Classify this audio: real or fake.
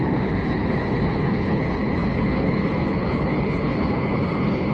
fake